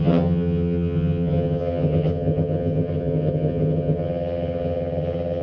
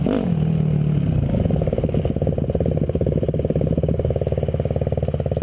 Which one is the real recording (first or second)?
second